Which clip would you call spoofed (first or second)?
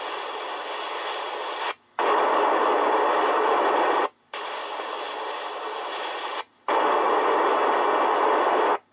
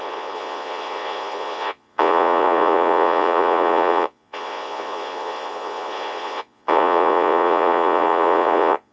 second